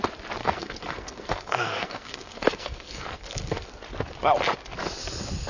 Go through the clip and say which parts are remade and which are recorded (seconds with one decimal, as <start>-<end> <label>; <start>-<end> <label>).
0.0-0.4 recorded; 0.4-3.7 remade; 3.7-5.5 recorded